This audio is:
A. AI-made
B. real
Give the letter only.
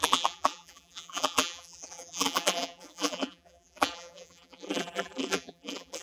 A